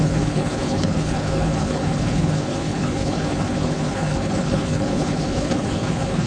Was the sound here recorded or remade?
remade